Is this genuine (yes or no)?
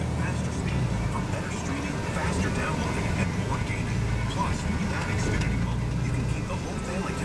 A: yes